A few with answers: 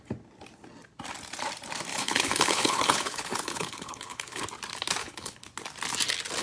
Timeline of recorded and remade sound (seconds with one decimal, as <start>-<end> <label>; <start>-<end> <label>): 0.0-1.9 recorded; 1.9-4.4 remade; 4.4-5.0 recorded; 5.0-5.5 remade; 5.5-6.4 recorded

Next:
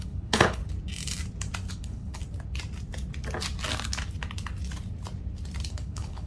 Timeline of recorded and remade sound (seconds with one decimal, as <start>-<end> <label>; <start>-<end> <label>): 0.0-0.6 remade; 0.6-1.7 recorded; 1.7-2.2 remade; 2.2-5.7 recorded; 5.7-6.3 remade

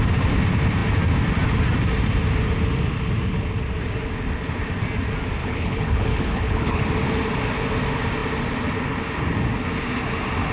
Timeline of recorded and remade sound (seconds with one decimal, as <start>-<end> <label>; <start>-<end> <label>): 0.0-5.4 recorded; 5.4-6.8 remade; 6.8-10.5 recorded

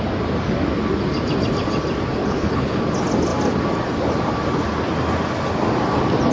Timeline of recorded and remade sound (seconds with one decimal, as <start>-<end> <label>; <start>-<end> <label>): 0.0-2.2 recorded; 2.2-2.8 remade; 2.8-6.3 recorded